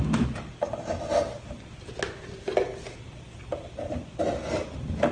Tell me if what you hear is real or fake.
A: real